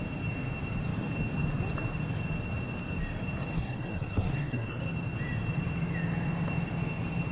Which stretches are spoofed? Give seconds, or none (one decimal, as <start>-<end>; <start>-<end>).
3.5-4.8